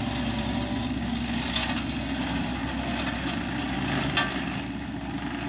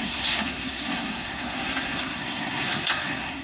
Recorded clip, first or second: first